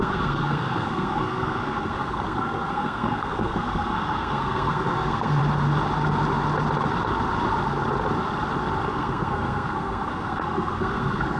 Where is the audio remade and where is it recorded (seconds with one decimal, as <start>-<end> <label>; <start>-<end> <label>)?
0.0-5.4 remade; 5.4-8.9 recorded; 8.9-11.4 remade